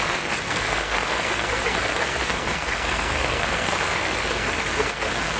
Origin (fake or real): fake